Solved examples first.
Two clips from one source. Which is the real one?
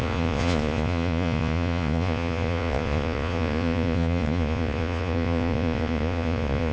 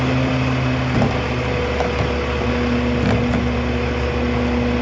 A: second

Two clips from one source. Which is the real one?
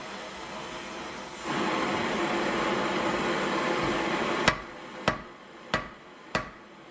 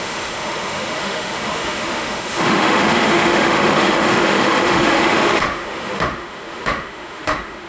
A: first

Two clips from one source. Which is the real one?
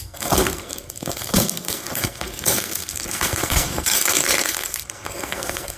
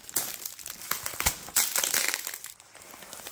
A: second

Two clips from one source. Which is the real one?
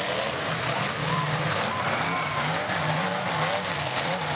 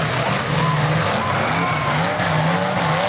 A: second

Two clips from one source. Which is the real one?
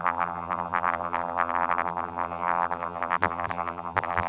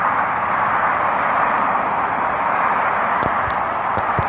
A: second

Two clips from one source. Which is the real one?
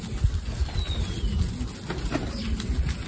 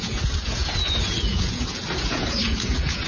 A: first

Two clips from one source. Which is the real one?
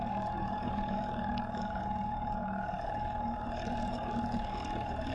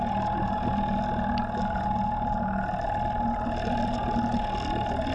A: second